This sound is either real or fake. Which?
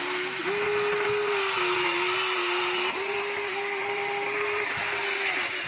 real